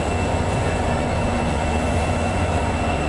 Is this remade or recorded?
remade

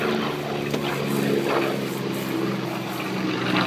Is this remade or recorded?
recorded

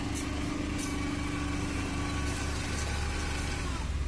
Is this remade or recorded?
recorded